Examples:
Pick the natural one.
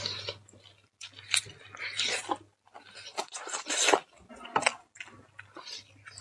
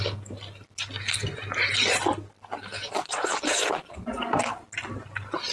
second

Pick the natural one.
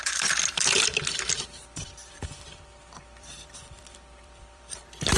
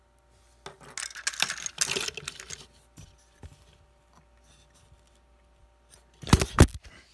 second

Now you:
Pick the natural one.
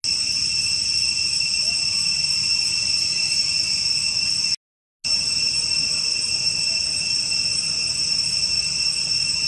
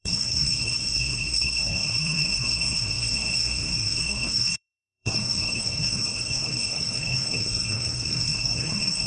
first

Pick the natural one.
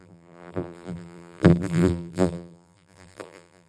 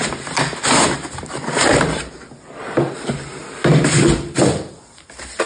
second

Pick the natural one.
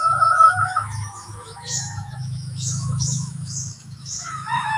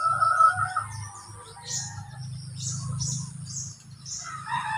second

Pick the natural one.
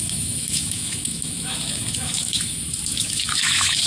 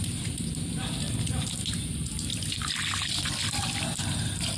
second